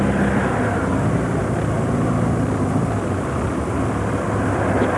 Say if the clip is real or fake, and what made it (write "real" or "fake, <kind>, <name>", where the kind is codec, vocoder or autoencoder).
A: real